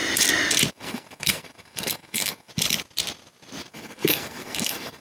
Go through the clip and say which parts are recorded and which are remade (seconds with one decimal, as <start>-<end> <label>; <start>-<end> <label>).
0.0-0.7 recorded; 0.7-2.5 remade; 2.5-3.7 recorded; 3.7-5.0 remade